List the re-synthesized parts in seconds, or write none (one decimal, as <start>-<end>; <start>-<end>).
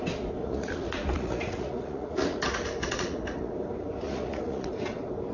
0.4-3.5; 4.0-4.7